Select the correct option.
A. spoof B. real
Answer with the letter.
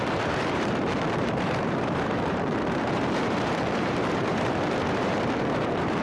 A